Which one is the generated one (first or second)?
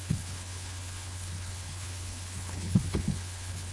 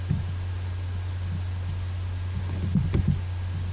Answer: first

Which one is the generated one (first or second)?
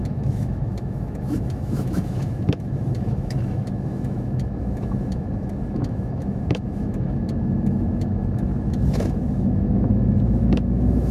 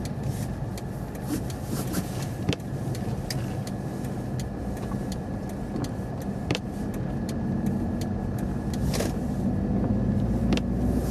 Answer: first